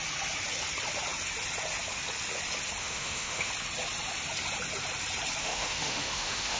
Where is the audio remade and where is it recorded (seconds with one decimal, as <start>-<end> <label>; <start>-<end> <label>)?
0.0-2.8 recorded; 2.8-3.5 remade; 3.5-5.4 recorded; 5.4-6.6 remade